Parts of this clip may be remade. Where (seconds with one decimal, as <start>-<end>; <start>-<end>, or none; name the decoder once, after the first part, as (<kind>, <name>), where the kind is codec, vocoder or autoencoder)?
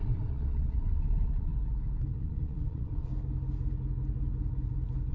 0.0-1.5 (vocoder, Vocos); 2.2-3.1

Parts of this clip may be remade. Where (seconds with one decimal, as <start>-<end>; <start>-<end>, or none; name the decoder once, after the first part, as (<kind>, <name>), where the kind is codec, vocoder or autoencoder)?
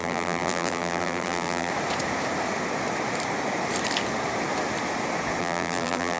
0.0-1.7 (vocoder, BigVGAN v2); 5.4-6.2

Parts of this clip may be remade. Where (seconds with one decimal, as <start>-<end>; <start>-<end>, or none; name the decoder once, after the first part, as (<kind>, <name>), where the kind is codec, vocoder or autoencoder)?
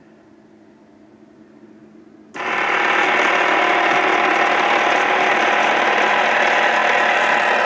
none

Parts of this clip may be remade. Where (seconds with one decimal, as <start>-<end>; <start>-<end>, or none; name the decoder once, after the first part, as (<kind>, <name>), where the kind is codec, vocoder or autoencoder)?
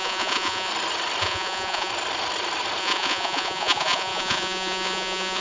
0.0-0.7 (vocoder, Vocos); 1.2-1.9; 2.8-5.4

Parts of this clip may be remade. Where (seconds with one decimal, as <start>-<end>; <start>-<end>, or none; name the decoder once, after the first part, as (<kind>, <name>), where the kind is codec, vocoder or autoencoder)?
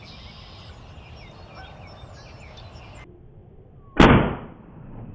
none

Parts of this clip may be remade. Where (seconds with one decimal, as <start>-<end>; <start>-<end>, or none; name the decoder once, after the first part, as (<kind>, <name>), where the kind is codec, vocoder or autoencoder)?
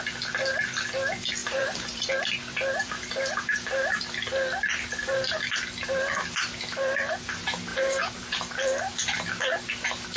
1.4-2.1 (vocoder, BigVGAN v2); 2.8-4.0; 7.7-8.3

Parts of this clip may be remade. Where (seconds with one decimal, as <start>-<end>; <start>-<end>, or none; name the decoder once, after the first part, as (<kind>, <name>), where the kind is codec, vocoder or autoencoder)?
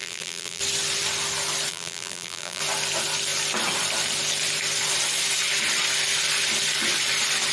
0.0-0.6 (vocoder, BigVGAN v2); 1.7-2.6